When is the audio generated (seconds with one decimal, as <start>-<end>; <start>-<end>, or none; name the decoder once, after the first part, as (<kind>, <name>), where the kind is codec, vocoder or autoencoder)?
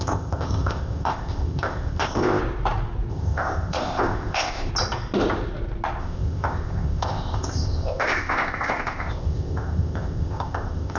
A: 0.0-2.4 (codec, ZipCodec); 3.1-4.7; 6.0-11.0